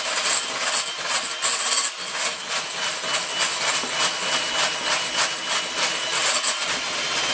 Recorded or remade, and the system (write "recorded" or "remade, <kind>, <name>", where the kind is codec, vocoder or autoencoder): recorded